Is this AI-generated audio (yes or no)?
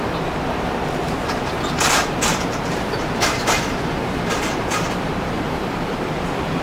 yes